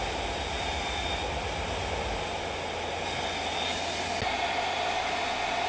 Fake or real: real